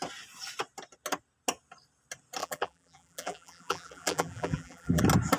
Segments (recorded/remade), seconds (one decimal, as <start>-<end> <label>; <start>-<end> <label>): 0.0-2.4 recorded; 2.4-5.0 remade; 5.0-5.4 recorded